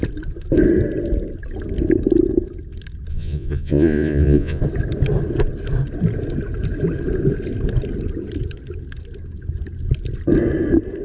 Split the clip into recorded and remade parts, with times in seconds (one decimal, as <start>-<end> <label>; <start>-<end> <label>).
0.0-3.1 recorded; 3.1-4.6 remade; 4.6-11.0 recorded